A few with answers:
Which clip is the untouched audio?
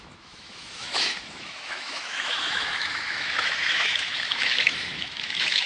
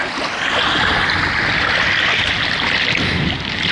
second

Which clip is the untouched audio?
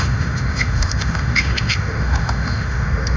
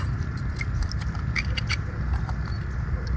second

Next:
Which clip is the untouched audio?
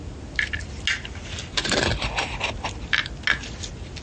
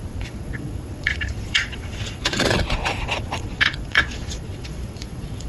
first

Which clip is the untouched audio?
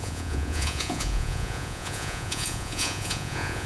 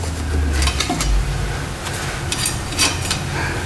second